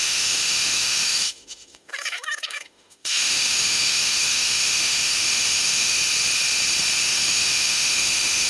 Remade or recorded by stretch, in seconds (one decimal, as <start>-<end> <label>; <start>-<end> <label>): 0.0-6.0 remade; 6.0-7.0 recorded; 7.0-8.5 remade